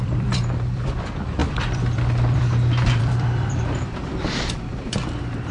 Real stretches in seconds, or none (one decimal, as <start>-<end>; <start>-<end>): none